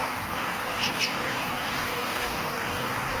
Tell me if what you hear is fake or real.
fake